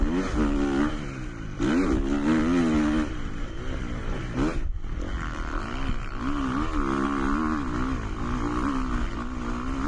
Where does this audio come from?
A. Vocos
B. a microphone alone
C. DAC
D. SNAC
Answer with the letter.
B